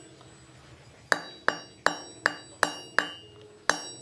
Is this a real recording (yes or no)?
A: yes